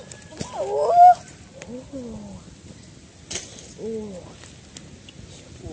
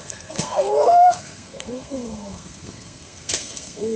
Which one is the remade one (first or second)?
second